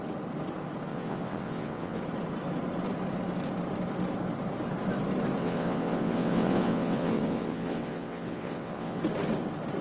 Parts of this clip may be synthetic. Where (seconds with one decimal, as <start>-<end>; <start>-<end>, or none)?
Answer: 0.9-2.0; 5.4-9.0